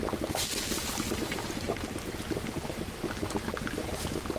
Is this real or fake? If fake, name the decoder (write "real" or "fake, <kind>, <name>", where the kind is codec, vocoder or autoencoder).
real